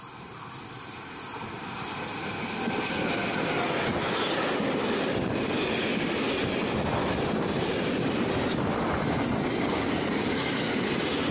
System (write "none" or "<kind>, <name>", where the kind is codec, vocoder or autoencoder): none